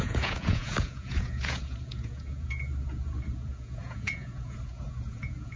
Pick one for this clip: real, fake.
fake